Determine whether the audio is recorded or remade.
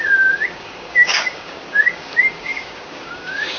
remade